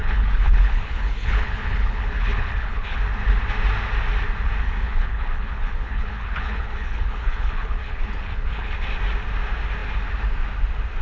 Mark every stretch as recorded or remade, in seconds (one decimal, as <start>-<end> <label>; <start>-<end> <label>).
0.0-3.0 remade; 3.0-4.8 recorded; 4.8-8.7 remade; 8.7-11.0 recorded